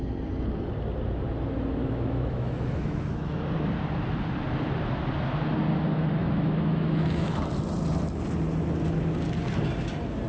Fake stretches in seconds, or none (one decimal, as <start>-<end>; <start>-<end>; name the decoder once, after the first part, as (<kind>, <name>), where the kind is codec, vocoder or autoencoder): 1.8-3.4 (autoencoder, DAC-VAE); 6.2-7.4